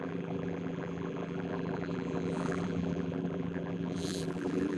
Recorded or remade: remade